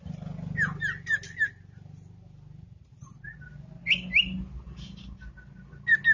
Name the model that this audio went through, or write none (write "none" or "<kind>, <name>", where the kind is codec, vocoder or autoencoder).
none